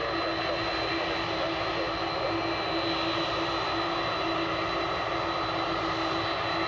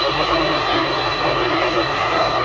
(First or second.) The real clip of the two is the first